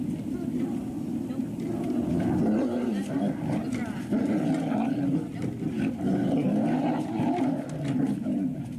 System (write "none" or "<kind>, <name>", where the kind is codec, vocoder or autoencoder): none